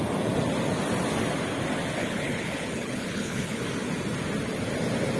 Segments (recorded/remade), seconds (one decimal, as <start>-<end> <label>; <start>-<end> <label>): 0.0-2.0 recorded; 2.0-3.6 remade; 3.6-5.2 recorded